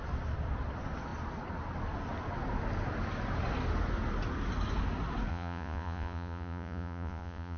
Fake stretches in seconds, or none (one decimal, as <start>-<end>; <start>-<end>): 5.3-7.6